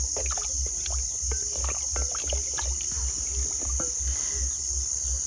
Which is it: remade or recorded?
recorded